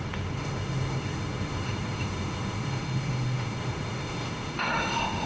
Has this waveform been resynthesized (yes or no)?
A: yes